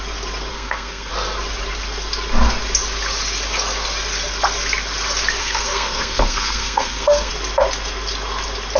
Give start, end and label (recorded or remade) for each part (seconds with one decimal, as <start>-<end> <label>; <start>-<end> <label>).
0.0-0.5 recorded; 0.5-1.1 remade; 1.1-5.4 recorded; 5.4-7.3 remade; 7.3-8.8 recorded